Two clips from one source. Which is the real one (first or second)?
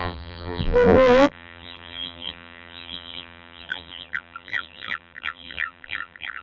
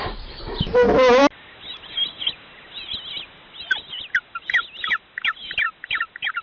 second